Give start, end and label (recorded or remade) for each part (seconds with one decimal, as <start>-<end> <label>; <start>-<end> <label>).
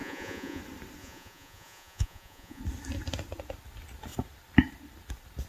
0.0-0.6 remade; 0.6-1.0 recorded; 1.0-2.6 remade; 2.6-5.5 recorded